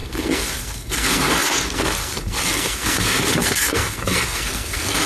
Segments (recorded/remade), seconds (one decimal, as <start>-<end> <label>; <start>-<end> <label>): 0.0-5.1 remade